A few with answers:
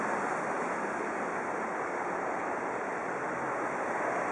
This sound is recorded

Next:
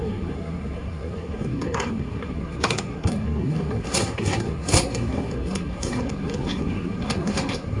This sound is remade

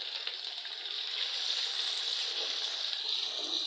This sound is recorded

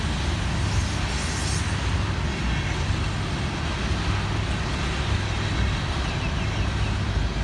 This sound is recorded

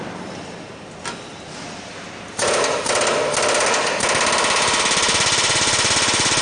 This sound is recorded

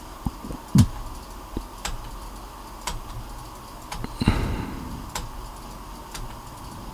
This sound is recorded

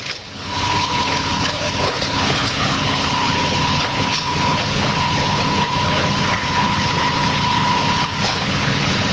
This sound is remade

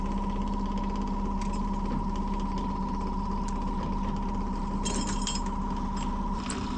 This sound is recorded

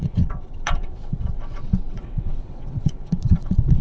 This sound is remade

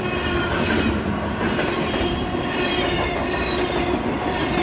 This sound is recorded